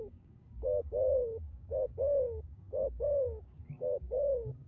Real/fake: fake